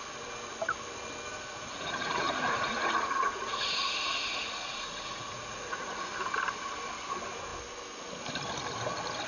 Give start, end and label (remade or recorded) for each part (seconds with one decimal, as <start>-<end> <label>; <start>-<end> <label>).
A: 0.0-1.3 recorded; 1.3-6.1 remade; 6.1-9.3 recorded

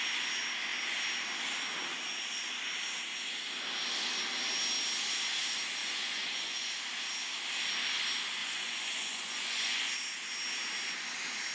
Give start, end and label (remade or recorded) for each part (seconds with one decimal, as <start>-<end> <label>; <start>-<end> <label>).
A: 0.0-5.8 recorded; 5.8-6.7 remade; 6.7-8.4 recorded; 8.4-9.9 remade; 9.9-11.5 recorded

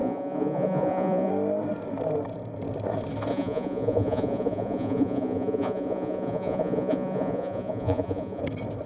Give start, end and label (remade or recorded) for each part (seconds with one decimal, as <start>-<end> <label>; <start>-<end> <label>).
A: 0.0-1.3 remade; 1.3-3.3 recorded; 3.3-8.4 remade; 8.4-8.9 recorded

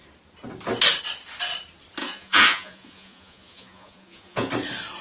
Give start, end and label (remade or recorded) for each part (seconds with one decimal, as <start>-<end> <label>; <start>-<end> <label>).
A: 0.0-2.0 recorded; 2.0-4.5 remade; 4.5-5.0 recorded